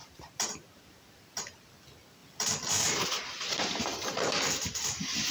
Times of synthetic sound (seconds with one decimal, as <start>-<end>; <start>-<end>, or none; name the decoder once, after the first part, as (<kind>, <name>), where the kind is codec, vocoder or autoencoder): 0.0-1.7 (vocoder, BigVGAN v2); 3.9-5.3